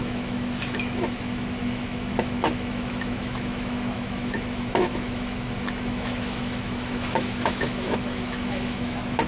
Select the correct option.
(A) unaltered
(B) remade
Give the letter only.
B